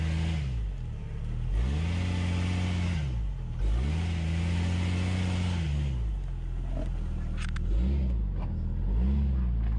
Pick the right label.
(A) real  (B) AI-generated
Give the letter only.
A